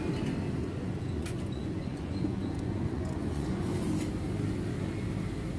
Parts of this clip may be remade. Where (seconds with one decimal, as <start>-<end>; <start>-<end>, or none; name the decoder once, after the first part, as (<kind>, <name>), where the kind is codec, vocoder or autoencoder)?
0.6-3.7 (vocoder, Vocos)